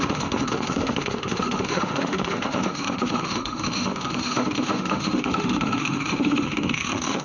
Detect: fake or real fake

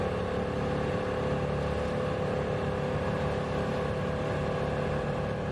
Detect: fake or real real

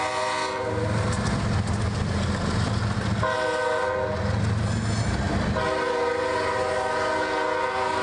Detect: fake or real real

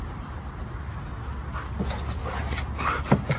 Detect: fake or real real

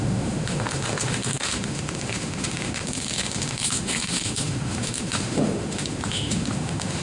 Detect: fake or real fake